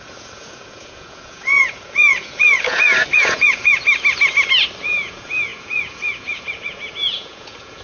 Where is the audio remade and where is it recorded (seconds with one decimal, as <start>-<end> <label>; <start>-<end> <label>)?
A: 0.0-3.7 remade; 3.7-4.8 recorded; 4.8-7.8 remade